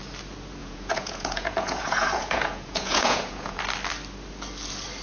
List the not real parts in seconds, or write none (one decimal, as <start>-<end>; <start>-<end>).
0.6-3.6